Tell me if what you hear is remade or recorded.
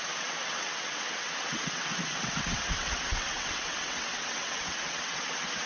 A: remade